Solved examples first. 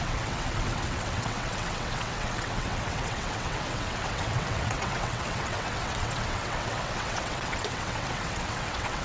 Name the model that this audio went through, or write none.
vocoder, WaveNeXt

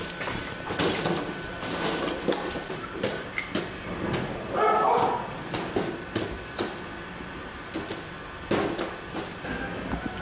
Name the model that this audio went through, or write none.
none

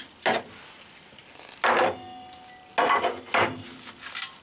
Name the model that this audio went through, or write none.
none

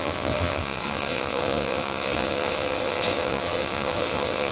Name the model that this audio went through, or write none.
vocoder, WaveNeXt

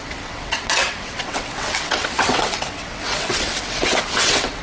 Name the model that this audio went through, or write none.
vocoder, WaveNeXt